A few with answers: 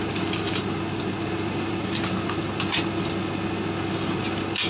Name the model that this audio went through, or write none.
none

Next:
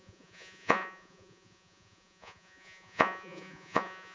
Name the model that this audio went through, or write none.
vocoder, Vocos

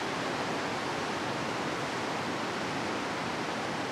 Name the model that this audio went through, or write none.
none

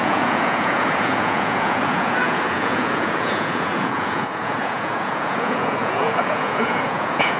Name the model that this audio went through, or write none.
vocoder, Vocos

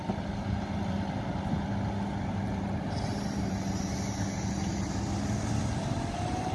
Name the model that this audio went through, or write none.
none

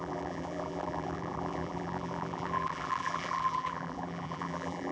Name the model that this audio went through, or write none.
vocoder, BigVGAN v2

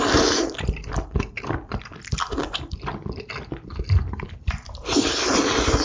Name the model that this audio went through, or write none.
vocoder, BigVGAN v2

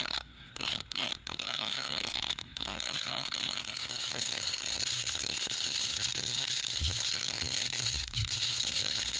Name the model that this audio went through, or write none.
codec, SNAC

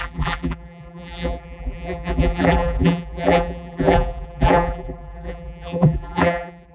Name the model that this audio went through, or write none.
vocoder, BigVGAN v2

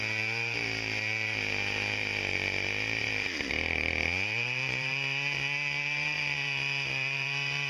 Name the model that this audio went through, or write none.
vocoder, BigVGAN v2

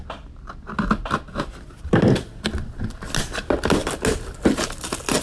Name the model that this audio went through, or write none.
none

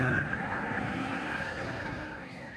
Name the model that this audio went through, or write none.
codec, SNAC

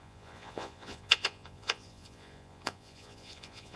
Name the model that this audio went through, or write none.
vocoder, Vocos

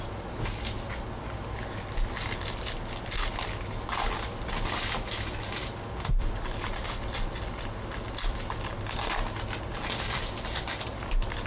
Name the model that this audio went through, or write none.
none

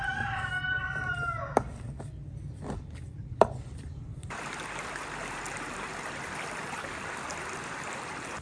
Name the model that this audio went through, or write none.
vocoder, BigVGAN v2